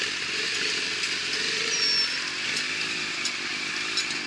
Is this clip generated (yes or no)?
no